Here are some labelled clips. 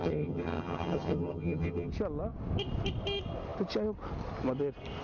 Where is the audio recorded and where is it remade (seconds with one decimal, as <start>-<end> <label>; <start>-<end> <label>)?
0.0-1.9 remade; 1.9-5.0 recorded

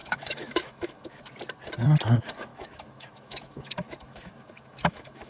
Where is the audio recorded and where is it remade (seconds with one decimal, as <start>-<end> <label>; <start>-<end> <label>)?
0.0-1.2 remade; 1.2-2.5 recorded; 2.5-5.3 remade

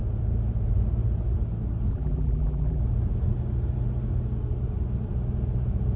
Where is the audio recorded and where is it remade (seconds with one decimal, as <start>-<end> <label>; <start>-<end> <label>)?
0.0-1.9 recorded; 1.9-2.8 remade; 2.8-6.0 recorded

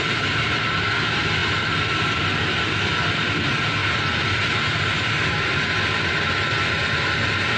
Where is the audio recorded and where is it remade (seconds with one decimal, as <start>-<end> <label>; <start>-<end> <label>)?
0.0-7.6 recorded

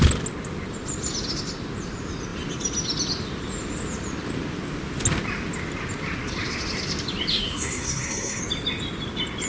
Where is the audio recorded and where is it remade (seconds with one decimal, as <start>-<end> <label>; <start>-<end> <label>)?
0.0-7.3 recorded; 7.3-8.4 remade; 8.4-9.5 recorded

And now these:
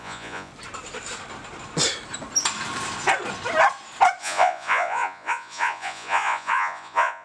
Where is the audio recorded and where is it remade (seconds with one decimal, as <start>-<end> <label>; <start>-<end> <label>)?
0.0-0.5 remade; 0.5-4.2 recorded; 4.2-7.2 remade

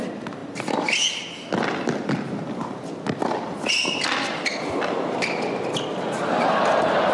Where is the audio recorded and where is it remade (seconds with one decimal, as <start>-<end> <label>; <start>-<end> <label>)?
0.0-7.1 recorded